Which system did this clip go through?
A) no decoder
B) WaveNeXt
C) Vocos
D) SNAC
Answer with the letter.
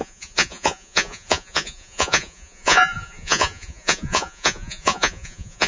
C